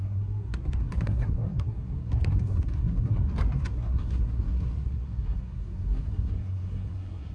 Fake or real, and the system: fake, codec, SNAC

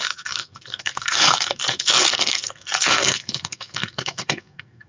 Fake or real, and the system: fake, codec, SNAC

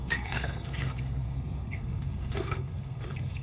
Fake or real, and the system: fake, codec, SNAC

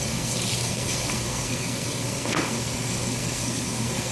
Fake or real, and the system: fake, codec, SNAC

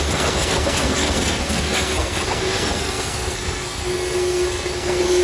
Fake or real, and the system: fake, codec, SNAC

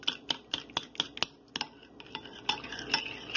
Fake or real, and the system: real